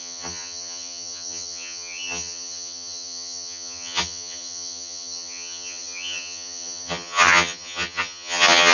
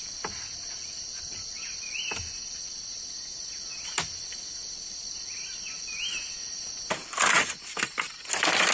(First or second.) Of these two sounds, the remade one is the first